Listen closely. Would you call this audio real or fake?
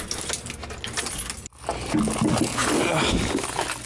real